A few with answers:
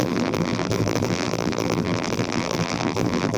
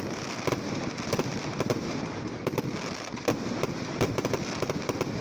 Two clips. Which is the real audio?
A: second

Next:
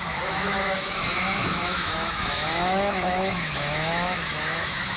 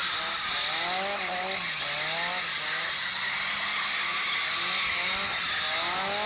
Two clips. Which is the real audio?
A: second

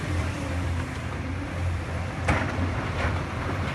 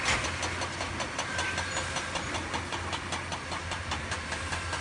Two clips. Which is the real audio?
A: second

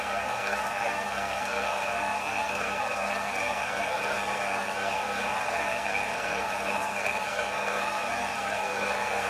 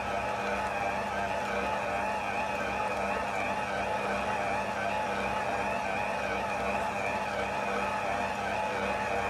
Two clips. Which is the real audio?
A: second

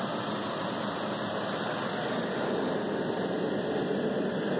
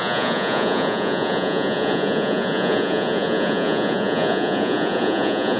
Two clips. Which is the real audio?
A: first